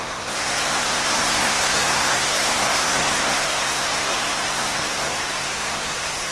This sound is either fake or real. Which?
fake